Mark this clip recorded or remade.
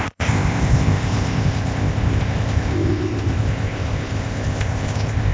remade